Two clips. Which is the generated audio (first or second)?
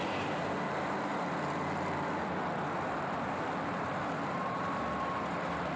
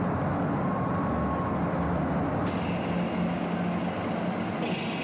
first